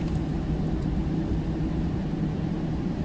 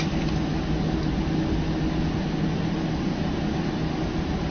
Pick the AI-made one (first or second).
first